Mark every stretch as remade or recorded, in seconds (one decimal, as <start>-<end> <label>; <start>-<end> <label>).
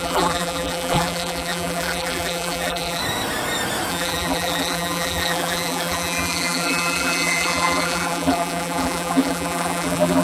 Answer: 0.0-3.0 remade; 3.0-3.9 recorded; 3.9-10.2 remade